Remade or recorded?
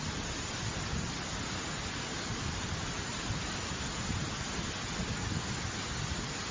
recorded